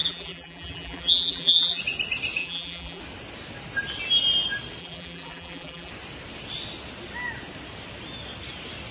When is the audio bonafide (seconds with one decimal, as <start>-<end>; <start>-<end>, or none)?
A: 1.8-2.4; 3.0-4.8; 5.9-8.9